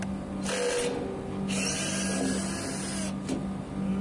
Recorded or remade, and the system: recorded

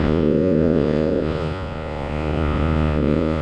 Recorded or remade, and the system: remade, vocoder, Vocos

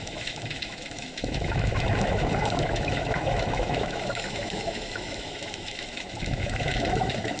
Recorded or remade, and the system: remade, autoencoder, DAC-VAE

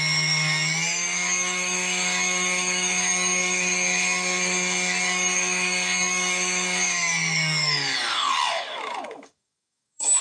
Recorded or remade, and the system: remade, codec, DAC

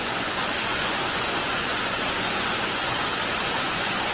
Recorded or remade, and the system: remade, vocoder, Vocos